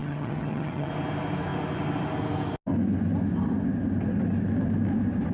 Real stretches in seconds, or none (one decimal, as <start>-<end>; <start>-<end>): 0.9-5.3